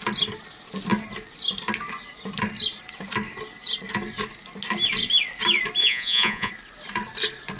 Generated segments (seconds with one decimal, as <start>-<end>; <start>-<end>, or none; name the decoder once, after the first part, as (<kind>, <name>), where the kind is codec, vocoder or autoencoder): 5.8-6.5 (vocoder, Vocos)